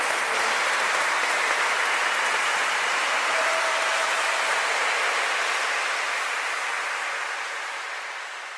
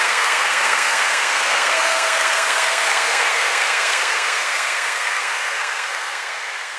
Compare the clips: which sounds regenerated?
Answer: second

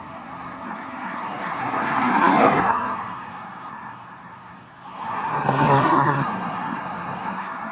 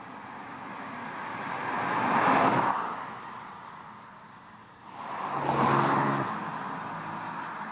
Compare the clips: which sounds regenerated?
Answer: first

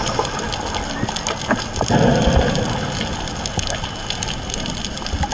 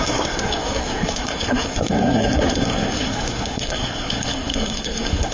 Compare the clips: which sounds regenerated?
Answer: second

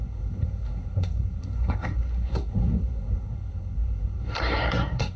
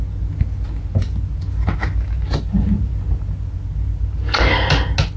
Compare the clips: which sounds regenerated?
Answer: first